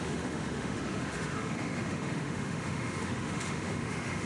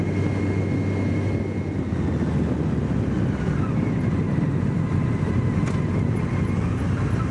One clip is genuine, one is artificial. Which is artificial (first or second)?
first